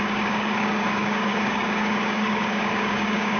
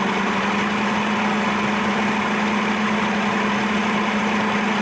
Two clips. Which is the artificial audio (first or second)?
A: first